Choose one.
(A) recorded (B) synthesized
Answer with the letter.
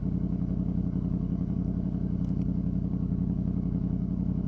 B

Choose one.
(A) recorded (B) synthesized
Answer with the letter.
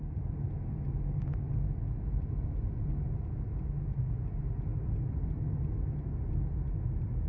A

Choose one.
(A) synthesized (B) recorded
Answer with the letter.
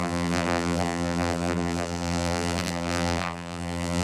A